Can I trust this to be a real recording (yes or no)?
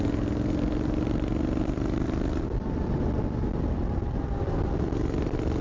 yes